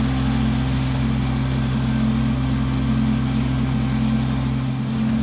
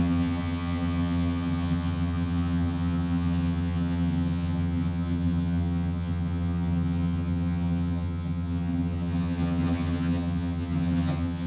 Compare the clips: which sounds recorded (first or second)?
first